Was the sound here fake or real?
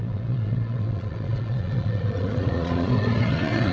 fake